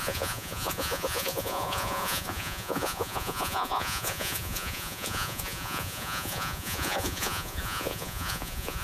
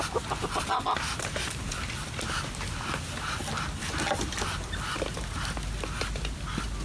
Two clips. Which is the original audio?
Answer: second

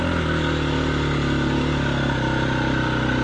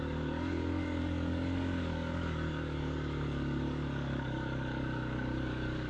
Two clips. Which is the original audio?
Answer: first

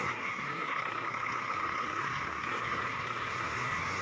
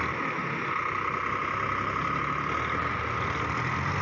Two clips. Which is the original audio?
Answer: second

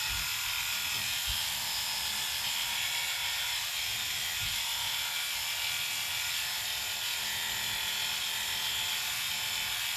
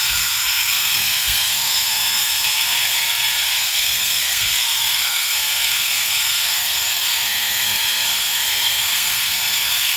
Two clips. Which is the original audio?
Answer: first